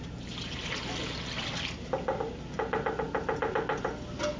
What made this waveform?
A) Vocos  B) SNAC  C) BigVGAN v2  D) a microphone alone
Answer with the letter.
D